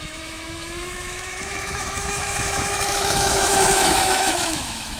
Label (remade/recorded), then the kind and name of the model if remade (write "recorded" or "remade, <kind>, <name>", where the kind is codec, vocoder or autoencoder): remade, autoencoder, DAC-VAE